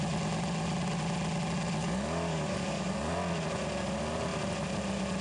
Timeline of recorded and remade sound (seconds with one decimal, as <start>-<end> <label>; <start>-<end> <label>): 0.0-1.8 recorded; 1.8-3.1 remade; 3.1-5.2 recorded